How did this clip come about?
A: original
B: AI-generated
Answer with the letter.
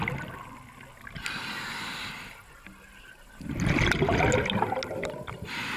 A